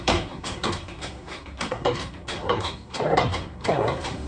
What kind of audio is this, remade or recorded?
remade